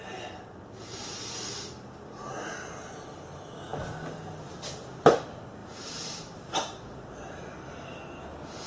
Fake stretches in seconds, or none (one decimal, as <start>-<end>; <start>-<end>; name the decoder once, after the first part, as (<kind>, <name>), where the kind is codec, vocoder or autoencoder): 5.6-7.2 (vocoder, BigVGAN v2)